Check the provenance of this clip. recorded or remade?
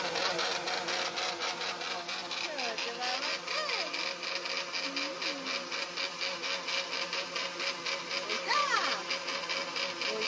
recorded